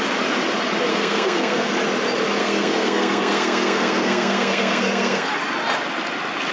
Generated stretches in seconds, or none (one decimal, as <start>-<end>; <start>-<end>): 0.9-1.7; 2.4-5.3